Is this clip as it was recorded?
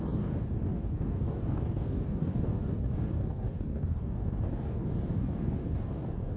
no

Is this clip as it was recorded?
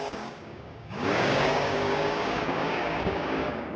no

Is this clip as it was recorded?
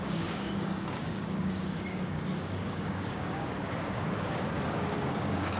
no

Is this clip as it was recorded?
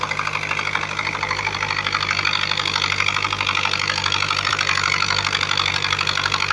yes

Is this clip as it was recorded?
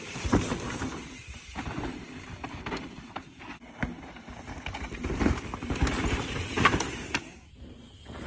yes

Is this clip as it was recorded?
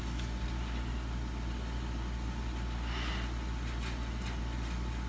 yes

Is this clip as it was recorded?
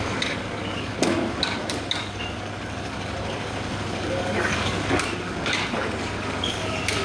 no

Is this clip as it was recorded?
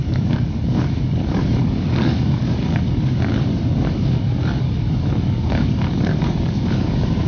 no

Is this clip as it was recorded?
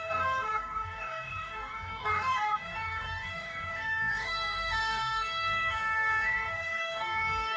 no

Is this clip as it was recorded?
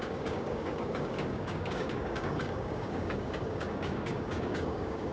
no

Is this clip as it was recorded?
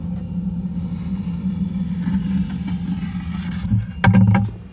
yes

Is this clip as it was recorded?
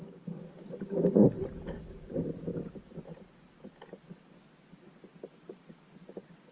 yes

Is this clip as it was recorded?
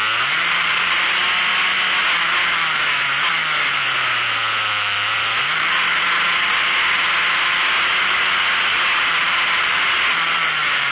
yes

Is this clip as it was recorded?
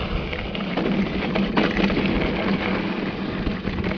yes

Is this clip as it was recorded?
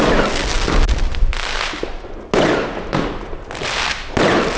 yes